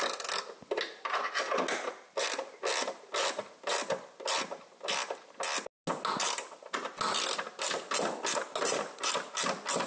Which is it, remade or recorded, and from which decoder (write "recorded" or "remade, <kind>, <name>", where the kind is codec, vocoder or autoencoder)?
recorded